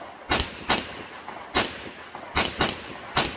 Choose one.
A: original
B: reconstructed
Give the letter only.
A